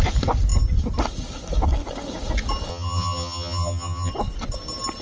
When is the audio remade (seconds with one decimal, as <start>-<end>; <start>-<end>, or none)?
2.7-4.1